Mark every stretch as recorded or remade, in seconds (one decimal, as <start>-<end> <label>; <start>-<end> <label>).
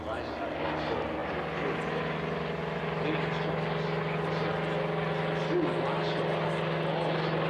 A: 0.0-7.5 recorded